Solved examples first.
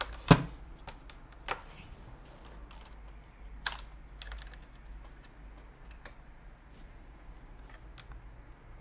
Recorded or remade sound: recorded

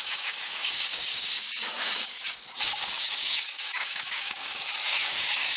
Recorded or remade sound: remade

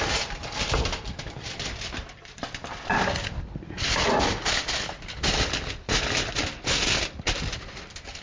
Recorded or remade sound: recorded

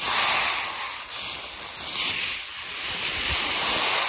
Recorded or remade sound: recorded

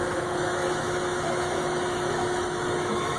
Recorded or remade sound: remade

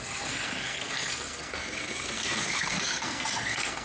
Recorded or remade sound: remade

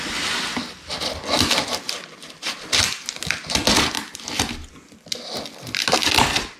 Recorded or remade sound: recorded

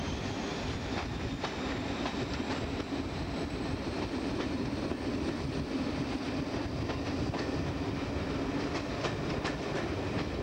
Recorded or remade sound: recorded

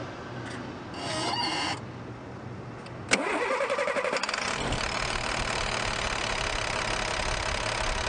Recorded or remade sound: recorded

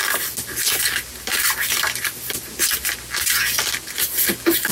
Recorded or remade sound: recorded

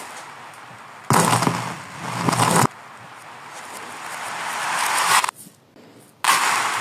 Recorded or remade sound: recorded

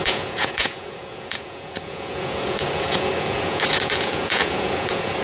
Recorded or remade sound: remade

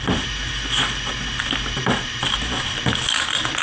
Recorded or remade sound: recorded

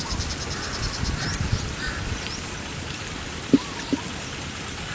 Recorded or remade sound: recorded